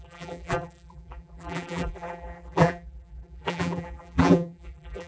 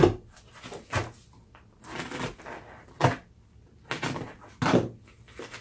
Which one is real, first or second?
second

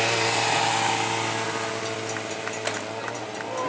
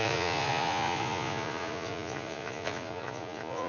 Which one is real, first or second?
first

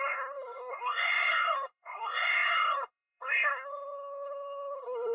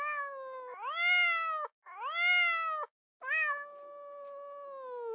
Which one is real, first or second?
second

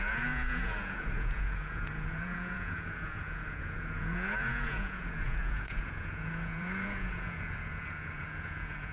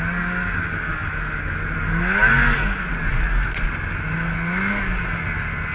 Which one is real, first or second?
second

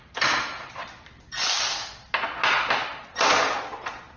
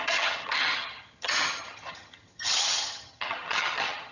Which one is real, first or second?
first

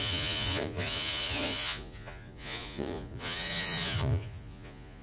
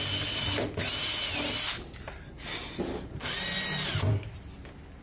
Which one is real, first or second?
second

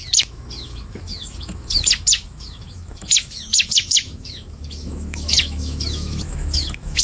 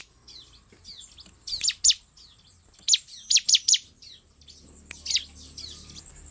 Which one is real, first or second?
second